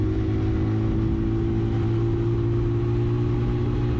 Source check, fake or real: real